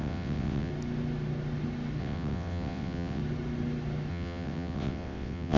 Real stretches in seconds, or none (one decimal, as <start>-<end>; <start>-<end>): 0.7-2.0; 3.2-4.1